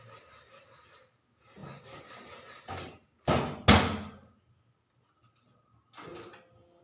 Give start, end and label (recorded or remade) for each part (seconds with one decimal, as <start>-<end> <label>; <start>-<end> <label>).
0.0-6.8 recorded